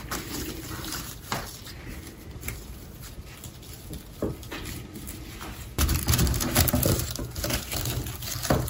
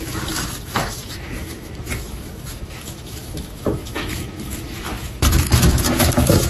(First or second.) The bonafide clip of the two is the first